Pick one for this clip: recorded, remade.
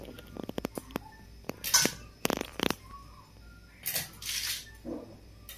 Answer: recorded